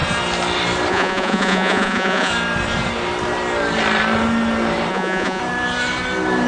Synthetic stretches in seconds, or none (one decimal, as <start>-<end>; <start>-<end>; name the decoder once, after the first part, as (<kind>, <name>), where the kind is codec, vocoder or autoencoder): 0.9-2.3 (vocoder, Vocos); 4.9-5.4